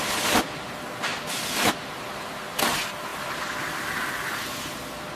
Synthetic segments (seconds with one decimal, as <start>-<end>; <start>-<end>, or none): 3.1-4.1